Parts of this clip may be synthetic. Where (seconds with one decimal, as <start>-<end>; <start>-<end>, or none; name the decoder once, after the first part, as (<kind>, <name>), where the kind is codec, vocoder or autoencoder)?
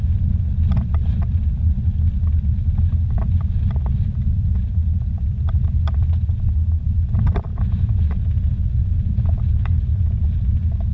7.5-10.9 (vocoder, Vocos)